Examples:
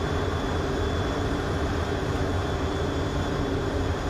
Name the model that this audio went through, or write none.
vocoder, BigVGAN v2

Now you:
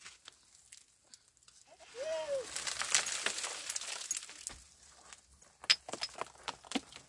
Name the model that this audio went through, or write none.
none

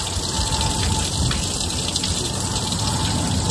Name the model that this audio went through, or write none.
none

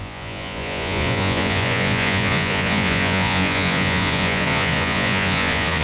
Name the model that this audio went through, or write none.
vocoder, Vocos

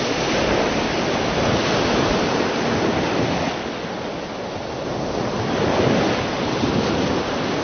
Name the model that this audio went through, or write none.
none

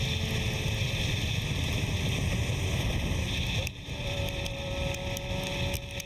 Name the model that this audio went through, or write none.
none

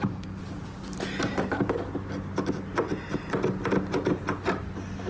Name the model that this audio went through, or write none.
none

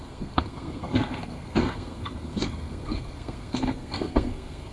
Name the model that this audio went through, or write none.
codec, SNAC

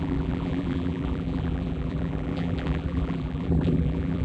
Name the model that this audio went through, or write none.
vocoder, BigVGAN v2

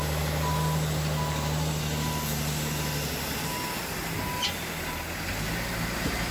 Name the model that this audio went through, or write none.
none